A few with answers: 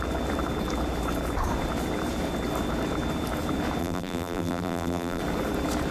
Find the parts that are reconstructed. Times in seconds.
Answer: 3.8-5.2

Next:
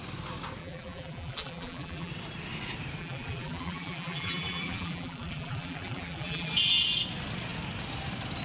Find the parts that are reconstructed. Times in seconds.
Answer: 0.6-2.1; 3.0-6.5

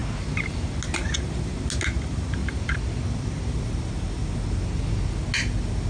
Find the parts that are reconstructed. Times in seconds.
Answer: 2.4-3.5

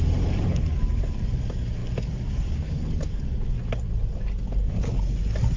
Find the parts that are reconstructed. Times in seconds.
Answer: 0.0-1.8

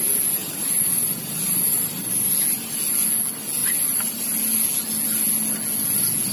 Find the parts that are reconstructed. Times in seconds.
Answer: 0.4-2.3; 3.6-4.4

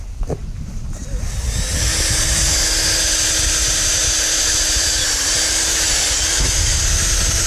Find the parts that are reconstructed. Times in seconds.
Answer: 0.4-1.0; 1.9-6.4

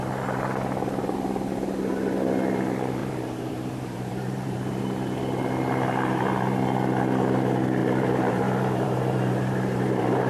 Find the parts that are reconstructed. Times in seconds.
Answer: 3.0-4.8; 7.8-10.3

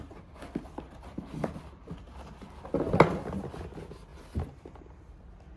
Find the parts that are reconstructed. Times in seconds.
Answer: 1.1-2.7